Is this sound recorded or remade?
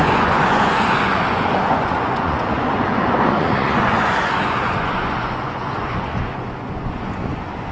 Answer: remade